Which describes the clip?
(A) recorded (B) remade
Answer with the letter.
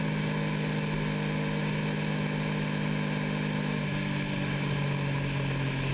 A